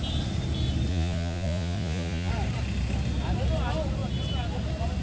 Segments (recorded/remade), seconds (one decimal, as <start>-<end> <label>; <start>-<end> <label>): 0.0-0.9 recorded; 0.9-2.3 remade; 2.3-5.0 recorded